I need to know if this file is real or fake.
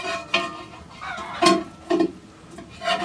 real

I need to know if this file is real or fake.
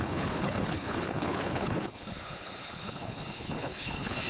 fake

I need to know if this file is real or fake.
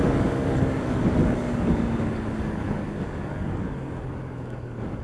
fake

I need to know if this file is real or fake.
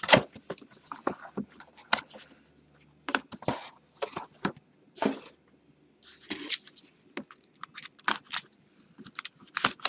real